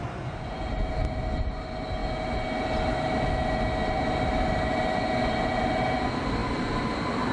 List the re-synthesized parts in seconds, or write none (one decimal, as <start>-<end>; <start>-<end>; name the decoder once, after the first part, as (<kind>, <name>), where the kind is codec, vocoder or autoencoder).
0.0-0.7 (vocoder, Vocos)